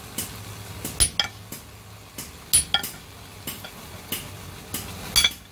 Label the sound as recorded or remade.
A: recorded